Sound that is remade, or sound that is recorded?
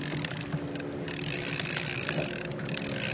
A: recorded